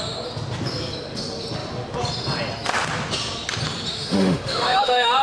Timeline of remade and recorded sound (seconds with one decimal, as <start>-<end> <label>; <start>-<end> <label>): 0.0-3.9 recorded; 3.9-5.2 remade